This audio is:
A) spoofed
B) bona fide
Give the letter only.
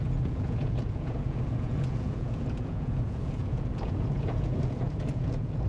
A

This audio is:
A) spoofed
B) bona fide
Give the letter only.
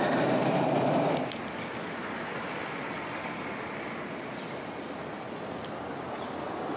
B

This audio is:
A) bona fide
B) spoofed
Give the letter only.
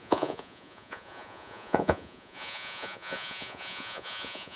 B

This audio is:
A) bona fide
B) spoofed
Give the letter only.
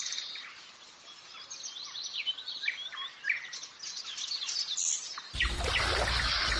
A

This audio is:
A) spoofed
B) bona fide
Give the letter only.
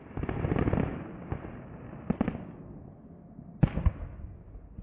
B